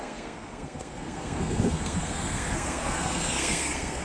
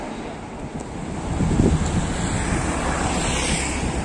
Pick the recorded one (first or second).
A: second